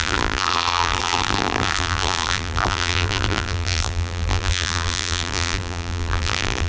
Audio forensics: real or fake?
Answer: fake